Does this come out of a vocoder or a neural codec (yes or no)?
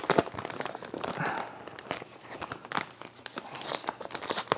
yes